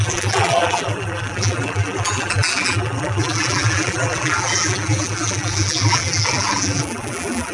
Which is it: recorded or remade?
remade